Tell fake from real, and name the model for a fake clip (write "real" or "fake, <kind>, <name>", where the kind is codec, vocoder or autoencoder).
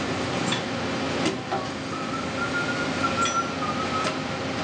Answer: real